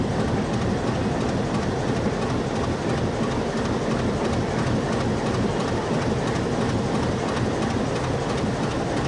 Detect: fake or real real